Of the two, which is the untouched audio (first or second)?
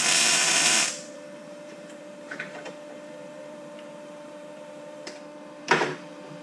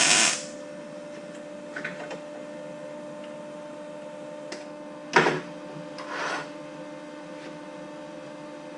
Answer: second